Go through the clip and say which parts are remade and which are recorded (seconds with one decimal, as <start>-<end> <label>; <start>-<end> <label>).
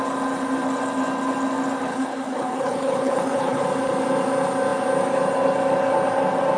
0.0-1.9 recorded; 1.9-3.6 remade; 3.6-6.6 recorded